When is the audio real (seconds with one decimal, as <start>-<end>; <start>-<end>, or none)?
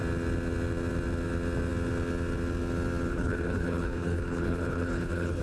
0.0-3.1